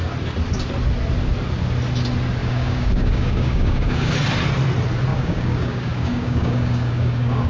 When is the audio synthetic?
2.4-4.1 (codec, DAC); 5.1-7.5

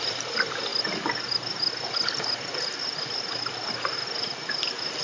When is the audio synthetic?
none

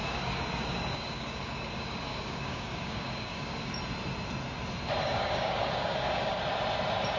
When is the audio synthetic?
0.0-3.7 (codec, DAC); 5.0-6.4